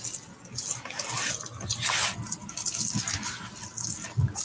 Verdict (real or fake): real